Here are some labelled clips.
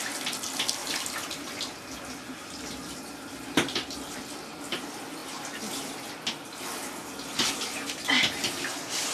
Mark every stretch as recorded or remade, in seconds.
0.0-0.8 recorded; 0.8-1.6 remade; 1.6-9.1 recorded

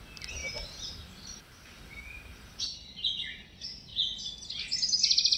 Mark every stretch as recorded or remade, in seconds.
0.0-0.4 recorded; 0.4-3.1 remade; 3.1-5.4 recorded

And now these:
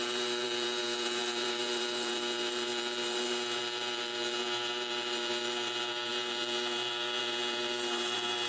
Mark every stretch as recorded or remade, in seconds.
0.0-8.5 remade

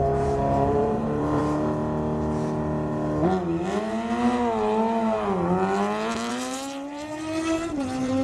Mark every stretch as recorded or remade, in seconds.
0.0-1.4 remade; 1.4-6.3 recorded; 6.3-8.2 remade